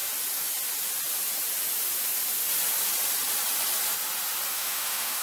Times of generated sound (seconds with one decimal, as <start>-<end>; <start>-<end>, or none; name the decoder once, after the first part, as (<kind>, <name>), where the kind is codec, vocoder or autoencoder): 4.5-5.2 (autoencoder, DAC-VAE)